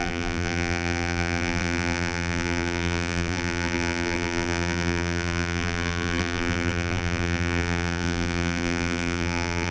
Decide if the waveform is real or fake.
fake